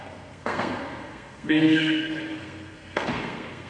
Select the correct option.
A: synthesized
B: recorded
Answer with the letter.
A